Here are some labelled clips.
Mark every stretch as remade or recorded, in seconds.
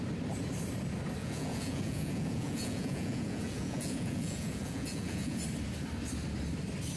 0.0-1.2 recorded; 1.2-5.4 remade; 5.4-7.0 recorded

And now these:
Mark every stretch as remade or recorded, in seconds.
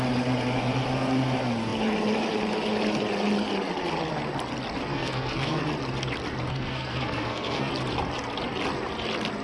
0.0-4.9 recorded; 4.9-5.6 remade; 5.6-6.5 recorded; 6.5-7.7 remade; 7.7-9.4 recorded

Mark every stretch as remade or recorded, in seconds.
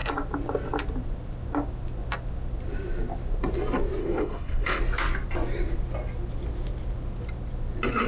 0.0-4.0 recorded; 4.0-4.8 remade; 4.8-8.1 recorded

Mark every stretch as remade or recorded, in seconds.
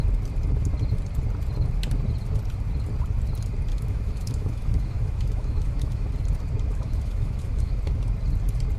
0.0-3.7 recorded; 3.7-6.1 remade; 6.1-6.7 recorded; 6.7-7.8 remade; 7.8-8.8 recorded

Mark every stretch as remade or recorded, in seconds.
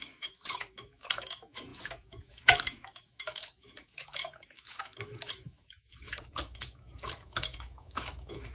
0.0-8.5 remade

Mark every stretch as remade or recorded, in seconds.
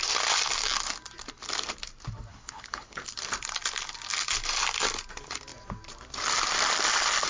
0.0-2.3 recorded; 2.3-3.0 remade; 3.0-7.3 recorded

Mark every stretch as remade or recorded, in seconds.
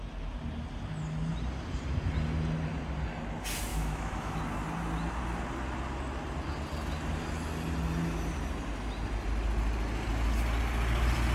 0.0-3.7 recorded; 3.7-4.4 remade; 4.4-11.3 recorded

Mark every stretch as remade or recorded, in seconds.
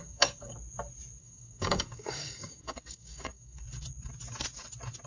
0.0-0.5 remade; 0.5-1.2 recorded; 1.2-3.6 remade; 3.6-5.1 recorded